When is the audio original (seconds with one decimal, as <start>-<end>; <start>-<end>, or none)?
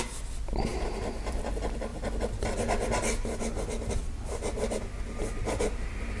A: 0.0-0.7; 1.5-6.2